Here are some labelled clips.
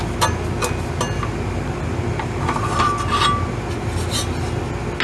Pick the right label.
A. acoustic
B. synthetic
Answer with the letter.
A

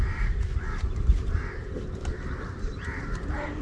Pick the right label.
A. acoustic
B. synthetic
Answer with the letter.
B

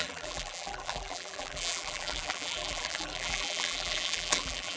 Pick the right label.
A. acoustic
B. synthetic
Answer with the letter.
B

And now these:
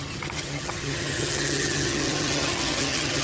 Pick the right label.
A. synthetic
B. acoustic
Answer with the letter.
A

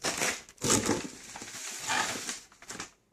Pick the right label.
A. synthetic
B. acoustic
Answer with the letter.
B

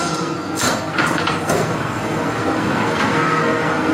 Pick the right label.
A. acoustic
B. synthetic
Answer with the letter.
B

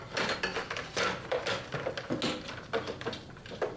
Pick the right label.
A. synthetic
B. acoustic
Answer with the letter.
B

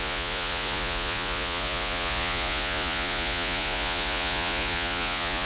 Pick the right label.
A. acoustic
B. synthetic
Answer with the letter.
B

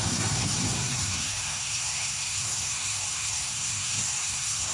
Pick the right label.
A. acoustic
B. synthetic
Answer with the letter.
B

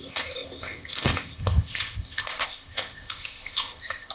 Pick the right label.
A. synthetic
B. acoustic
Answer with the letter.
A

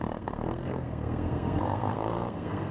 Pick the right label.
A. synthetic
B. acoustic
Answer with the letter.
A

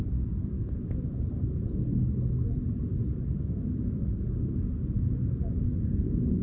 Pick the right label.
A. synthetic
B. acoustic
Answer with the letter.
B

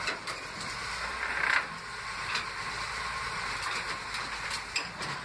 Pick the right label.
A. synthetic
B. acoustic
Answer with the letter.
B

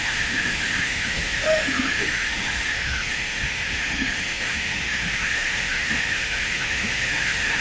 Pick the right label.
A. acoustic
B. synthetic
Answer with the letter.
B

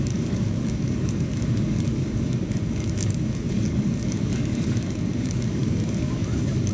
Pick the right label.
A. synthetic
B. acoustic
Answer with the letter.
A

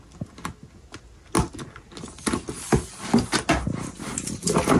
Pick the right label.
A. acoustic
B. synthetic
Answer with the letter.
A